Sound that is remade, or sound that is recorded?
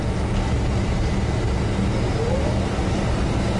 recorded